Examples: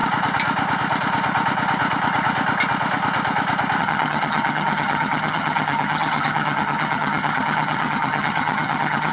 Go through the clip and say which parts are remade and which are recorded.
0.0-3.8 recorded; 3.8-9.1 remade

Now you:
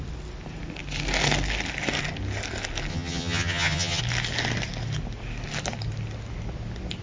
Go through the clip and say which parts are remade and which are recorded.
0.0-2.9 recorded; 2.9-4.0 remade; 4.0-7.0 recorded

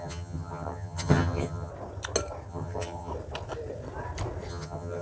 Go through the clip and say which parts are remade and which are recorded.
0.0-1.7 remade; 1.7-2.5 recorded; 2.5-3.1 remade; 3.1-4.5 recorded; 4.5-5.0 remade